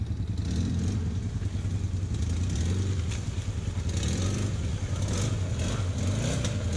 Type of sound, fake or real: real